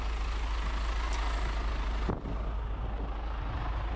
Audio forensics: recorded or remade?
recorded